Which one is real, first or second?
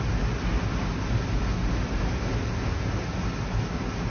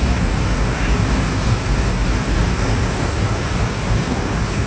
first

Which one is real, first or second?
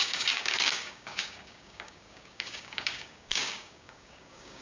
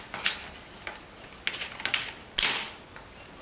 second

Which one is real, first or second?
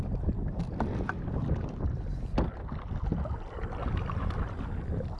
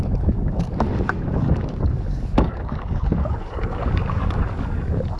first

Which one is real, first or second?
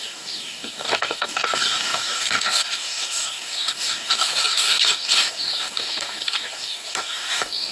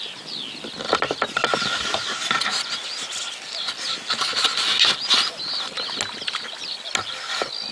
second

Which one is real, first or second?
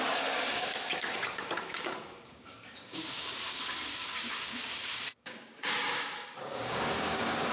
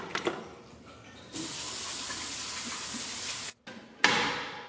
second